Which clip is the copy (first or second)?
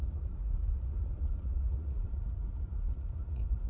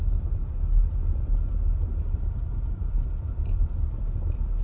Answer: first